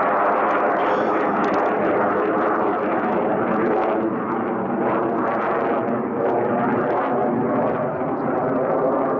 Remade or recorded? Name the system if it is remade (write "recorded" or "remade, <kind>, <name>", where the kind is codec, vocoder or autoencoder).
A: recorded